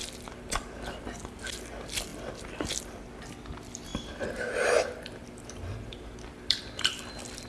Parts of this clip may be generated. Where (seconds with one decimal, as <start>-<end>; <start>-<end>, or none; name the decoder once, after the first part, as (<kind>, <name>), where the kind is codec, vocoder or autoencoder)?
0.0-7.5 (vocoder, BigVGAN v2)